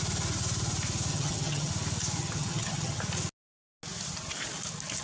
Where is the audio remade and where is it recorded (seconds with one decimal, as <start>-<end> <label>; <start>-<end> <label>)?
0.0-1.1 recorded; 1.1-1.7 remade; 1.7-2.2 recorded; 2.2-3.0 remade; 3.0-5.0 recorded